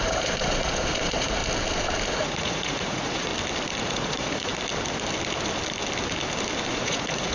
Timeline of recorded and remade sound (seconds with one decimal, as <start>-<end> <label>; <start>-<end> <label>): 0.0-1.4 remade; 1.4-2.2 recorded; 2.2-3.3 remade; 3.3-3.8 recorded; 3.8-4.5 remade; 4.5-6.7 recorded; 6.7-7.3 remade